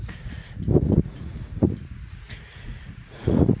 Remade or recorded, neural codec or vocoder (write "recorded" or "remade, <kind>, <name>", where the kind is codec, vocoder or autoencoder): remade, vocoder, Vocos